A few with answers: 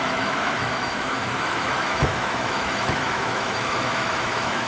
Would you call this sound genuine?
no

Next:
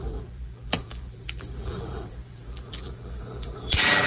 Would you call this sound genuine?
no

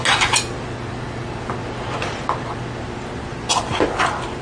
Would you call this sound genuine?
yes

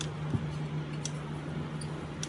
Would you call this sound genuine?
yes